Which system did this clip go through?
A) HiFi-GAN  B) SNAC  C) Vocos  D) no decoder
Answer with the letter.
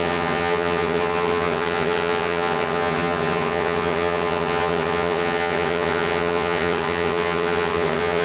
A